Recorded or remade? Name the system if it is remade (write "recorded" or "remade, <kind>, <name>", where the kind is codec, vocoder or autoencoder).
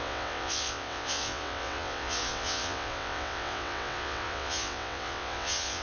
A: remade, vocoder, WaveNeXt